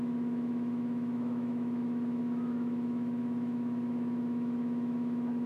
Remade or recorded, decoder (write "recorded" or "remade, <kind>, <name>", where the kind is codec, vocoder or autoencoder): remade, autoencoder, DAC-VAE